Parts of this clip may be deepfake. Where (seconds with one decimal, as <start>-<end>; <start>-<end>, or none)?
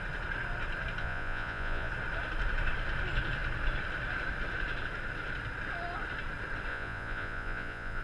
1.0-1.9; 6.7-8.0